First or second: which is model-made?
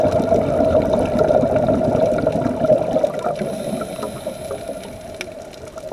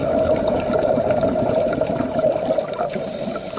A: second